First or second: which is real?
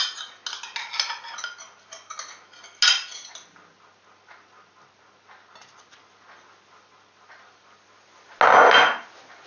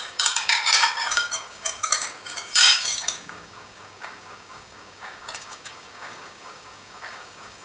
first